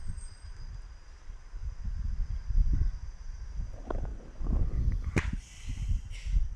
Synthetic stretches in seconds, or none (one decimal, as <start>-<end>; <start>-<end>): none